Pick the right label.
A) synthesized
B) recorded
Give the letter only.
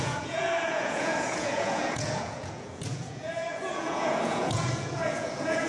A